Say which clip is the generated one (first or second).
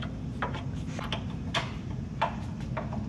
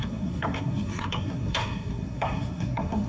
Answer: second